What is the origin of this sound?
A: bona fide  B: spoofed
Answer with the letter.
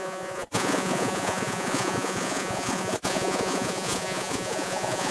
B